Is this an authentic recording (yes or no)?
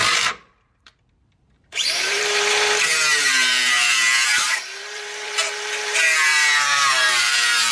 no